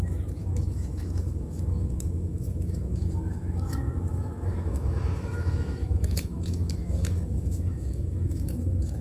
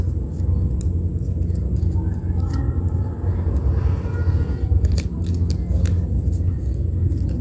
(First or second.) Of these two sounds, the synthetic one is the first